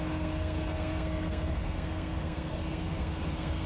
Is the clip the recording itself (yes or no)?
no